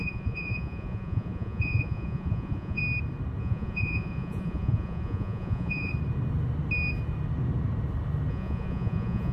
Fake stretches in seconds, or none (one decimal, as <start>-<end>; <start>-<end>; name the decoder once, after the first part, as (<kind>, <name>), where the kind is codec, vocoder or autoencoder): 0.0-2.8 (vocoder, Vocos); 3.4-5.9; 8.3-9.3